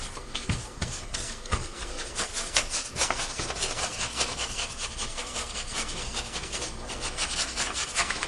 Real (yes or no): no